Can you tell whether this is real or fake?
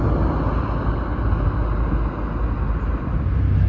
real